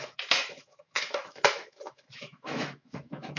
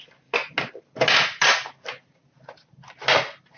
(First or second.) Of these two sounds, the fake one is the first